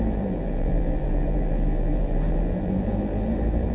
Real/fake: fake